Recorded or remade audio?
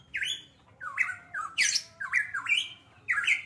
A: recorded